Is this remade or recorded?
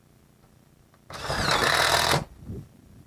recorded